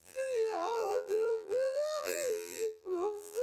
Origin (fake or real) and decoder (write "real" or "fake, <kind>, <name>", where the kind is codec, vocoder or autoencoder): fake, vocoder, BigVGAN v2